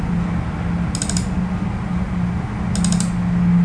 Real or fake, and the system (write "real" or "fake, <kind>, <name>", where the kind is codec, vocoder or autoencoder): real